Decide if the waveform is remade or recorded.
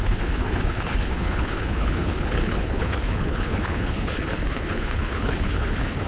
remade